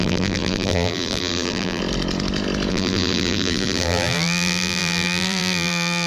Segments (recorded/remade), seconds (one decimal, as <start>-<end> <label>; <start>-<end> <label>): 0.0-1.8 remade; 1.8-2.7 recorded; 2.7-6.1 remade